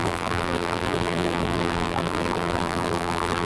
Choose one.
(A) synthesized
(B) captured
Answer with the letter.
A